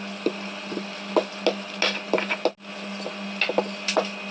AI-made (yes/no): no